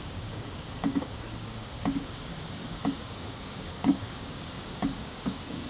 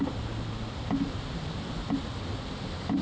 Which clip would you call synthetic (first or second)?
first